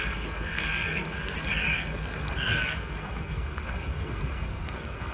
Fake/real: fake